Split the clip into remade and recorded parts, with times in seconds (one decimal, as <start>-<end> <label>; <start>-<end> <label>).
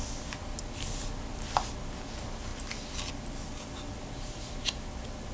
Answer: 0.0-5.3 recorded